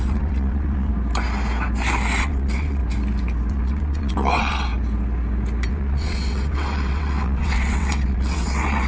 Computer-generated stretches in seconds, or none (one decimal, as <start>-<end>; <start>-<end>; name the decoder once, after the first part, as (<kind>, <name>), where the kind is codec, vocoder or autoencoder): 0.0-0.9 (vocoder, WaveNeXt); 2.2-2.8; 3.5-4.7; 5.7-8.9